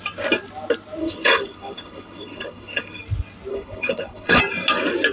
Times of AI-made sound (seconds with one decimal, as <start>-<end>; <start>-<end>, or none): 1.0-3.0; 3.5-4.4